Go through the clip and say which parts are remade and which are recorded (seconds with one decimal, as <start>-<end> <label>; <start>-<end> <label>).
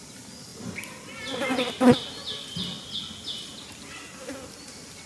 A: 0.0-5.1 recorded